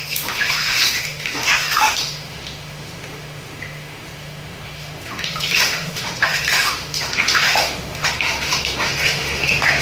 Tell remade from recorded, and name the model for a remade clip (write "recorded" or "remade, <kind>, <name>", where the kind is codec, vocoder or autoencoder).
remade, autoencoder, DAC-VAE